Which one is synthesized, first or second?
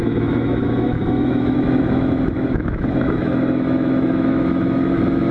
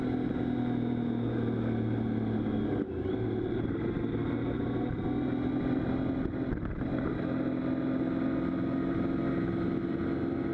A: first